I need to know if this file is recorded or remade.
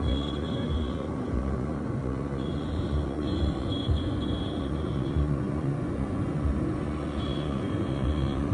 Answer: remade